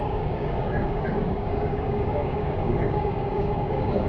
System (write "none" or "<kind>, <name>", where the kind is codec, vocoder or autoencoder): codec, DAC